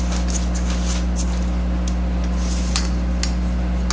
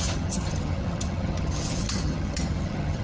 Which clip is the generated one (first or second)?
second